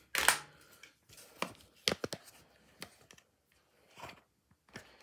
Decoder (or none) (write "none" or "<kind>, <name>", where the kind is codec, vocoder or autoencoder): none